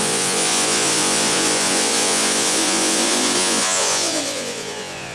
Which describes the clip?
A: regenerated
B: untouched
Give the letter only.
A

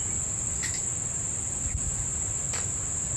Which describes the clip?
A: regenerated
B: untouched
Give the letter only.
B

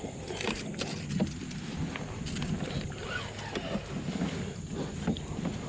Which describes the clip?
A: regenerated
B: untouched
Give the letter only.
B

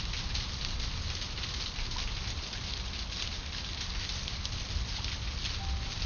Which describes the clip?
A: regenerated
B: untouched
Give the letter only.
B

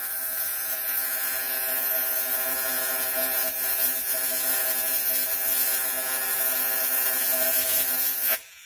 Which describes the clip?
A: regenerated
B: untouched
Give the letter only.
A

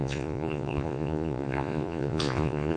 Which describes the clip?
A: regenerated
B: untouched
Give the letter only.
A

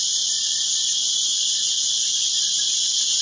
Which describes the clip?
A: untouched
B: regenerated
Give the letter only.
A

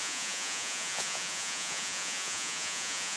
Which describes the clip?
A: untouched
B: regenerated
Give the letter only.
B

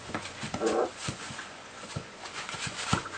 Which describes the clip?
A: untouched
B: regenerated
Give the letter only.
B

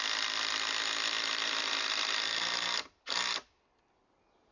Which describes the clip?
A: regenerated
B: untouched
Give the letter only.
B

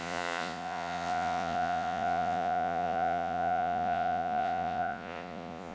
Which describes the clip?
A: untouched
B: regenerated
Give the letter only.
B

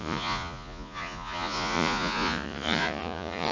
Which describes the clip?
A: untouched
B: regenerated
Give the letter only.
B